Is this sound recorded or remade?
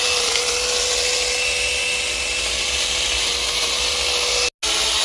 recorded